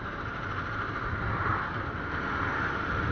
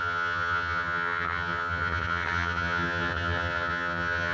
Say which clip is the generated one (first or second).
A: second